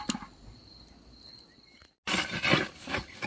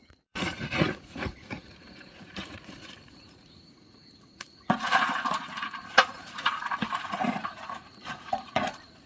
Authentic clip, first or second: first